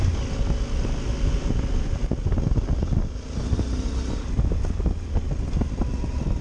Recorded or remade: recorded